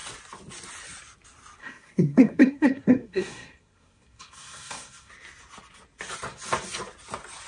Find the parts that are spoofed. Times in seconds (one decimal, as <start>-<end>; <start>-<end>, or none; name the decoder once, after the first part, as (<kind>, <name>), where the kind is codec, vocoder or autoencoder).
1.6-5.1 (codec, SNAC)